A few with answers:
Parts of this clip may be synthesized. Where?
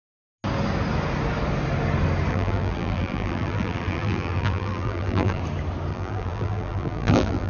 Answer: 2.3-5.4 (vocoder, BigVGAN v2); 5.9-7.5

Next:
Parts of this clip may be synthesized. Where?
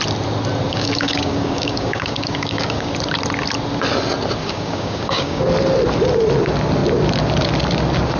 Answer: 0.7-2.9 (codec, DAC); 4.4-5.4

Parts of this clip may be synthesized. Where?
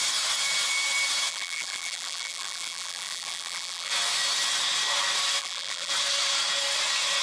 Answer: 1.3-3.9 (vocoder, BigVGAN v2); 5.4-5.9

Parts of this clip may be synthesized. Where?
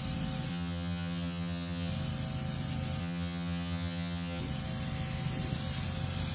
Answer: 0.5-1.9 (vocoder, HiFi-GAN); 3.0-4.4